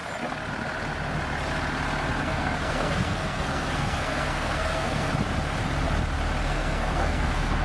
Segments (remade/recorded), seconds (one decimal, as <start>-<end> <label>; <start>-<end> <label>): 0.0-2.2 recorded; 2.2-5.1 remade; 5.1-6.4 recorded; 6.4-7.6 remade